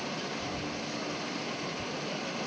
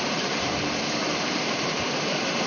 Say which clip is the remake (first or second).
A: second